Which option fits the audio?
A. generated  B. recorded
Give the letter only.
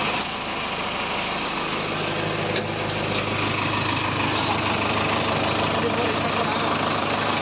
B